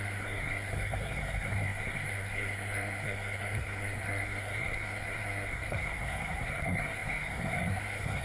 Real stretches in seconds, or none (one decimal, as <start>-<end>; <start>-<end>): none